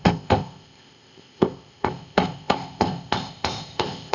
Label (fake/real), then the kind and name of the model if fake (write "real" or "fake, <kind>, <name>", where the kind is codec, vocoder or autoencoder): fake, codec, ZipCodec